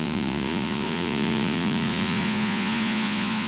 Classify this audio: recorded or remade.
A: remade